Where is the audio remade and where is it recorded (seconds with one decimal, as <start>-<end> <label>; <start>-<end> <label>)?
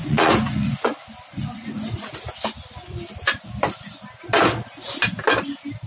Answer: 0.0-0.9 remade; 0.9-1.3 recorded; 1.3-2.1 remade; 2.1-5.9 recorded